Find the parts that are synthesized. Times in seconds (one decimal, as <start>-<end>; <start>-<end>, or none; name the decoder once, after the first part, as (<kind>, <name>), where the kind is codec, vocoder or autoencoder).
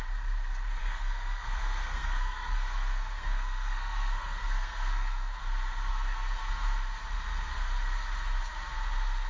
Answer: 0.8-5.4 (codec, SNAC); 5.9-6.5